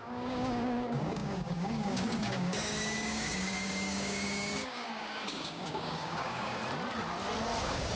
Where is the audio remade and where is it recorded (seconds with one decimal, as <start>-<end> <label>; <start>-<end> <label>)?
0.0-6.6 remade; 6.6-7.6 recorded; 7.6-8.0 remade